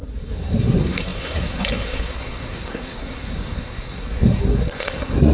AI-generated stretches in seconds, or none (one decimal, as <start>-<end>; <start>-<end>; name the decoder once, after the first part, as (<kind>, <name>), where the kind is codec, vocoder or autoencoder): 0.0-5.3 (codec, SNAC)